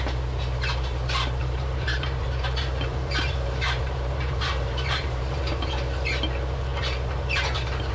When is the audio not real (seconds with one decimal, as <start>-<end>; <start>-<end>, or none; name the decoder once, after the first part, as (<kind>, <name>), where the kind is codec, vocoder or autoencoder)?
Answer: 1.4-5.4 (vocoder, BigVGAN v2)